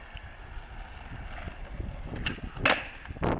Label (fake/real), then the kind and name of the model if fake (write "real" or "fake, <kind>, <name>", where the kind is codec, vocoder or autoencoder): real